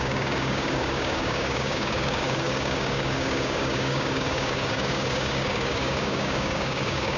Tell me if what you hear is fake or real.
fake